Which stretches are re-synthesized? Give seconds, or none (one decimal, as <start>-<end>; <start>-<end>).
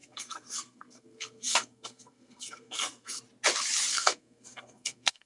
0.0-3.2; 3.9-5.3